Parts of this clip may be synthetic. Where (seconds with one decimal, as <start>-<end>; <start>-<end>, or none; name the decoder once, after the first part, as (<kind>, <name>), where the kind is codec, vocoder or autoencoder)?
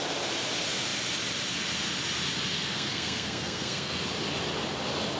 2.7-4.0 (codec, SNAC)